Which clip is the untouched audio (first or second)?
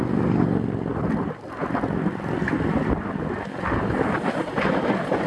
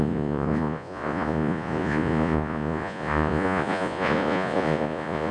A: first